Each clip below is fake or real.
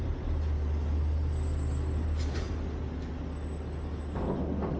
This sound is real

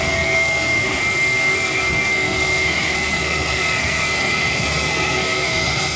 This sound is fake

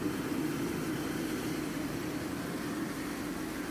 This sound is real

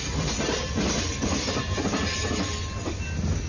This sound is real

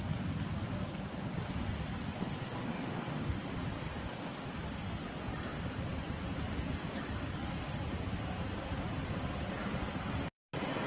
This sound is real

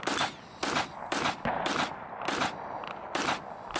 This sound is real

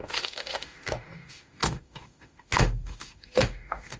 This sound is fake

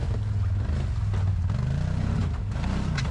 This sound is real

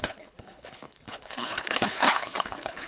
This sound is fake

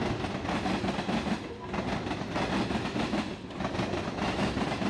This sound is real